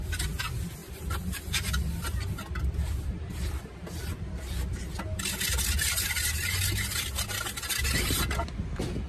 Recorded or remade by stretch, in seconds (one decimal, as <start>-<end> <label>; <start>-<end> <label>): 0.0-0.8 recorded; 0.8-4.1 remade; 4.1-9.1 recorded